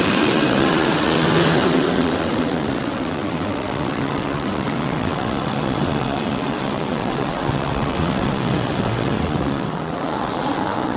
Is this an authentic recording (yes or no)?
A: no